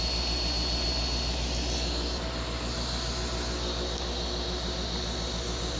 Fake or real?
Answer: real